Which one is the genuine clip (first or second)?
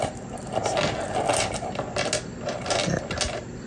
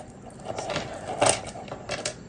first